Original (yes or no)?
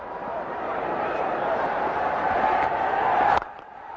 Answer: no